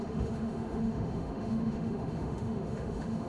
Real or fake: fake